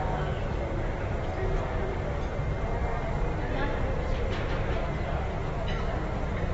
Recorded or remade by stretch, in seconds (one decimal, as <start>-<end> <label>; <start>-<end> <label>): 0.0-6.5 recorded